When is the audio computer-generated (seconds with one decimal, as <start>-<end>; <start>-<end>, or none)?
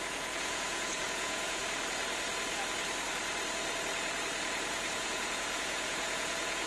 0.0-1.6; 4.7-6.7